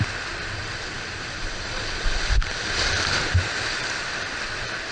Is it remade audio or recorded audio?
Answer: remade